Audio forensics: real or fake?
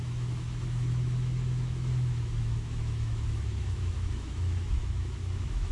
fake